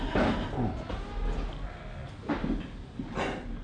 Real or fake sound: real